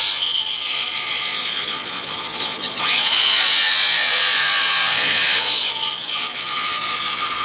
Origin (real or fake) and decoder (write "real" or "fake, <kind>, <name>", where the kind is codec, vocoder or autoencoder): fake, vocoder, Vocos